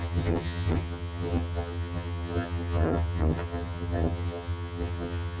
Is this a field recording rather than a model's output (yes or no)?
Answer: no